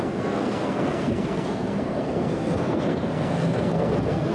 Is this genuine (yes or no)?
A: no